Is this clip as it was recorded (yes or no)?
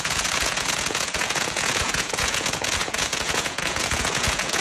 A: no